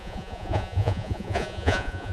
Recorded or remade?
remade